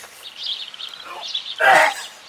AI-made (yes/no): no